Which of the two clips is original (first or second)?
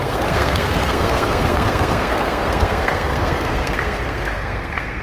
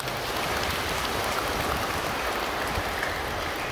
second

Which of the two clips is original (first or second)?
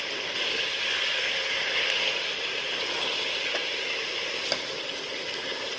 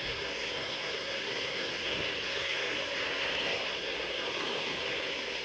first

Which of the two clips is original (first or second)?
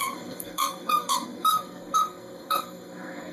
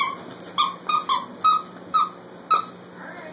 second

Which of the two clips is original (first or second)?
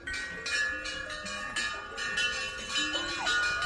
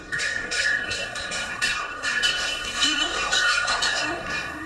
first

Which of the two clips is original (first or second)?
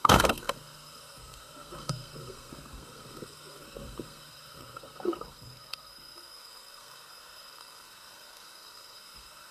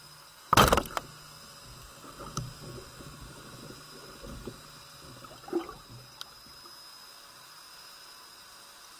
second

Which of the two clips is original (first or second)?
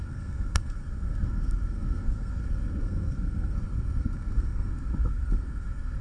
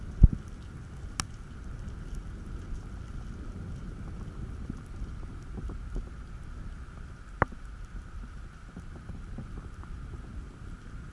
second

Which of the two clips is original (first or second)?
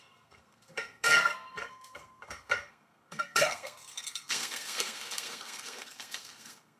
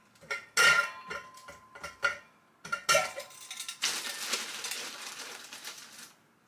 second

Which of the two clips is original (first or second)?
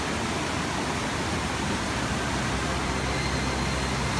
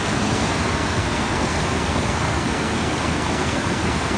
first